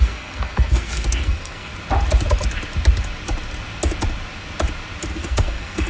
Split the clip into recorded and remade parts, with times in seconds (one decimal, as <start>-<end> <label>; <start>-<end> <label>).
0.0-1.7 remade; 1.7-5.1 recorded; 5.1-5.9 remade

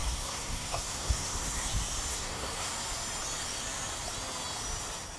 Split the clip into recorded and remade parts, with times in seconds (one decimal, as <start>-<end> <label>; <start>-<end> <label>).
0.0-1.7 remade; 1.7-2.1 recorded; 2.1-2.7 remade; 2.7-5.2 recorded

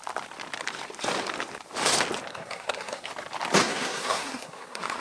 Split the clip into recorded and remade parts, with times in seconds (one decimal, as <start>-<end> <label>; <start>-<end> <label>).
0.0-2.3 recorded; 2.3-3.1 remade; 3.1-3.6 recorded; 3.6-5.0 remade

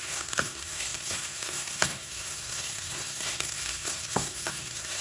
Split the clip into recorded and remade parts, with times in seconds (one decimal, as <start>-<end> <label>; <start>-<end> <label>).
0.0-5.0 remade